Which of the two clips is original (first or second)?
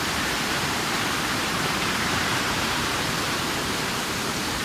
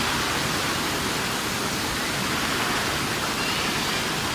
second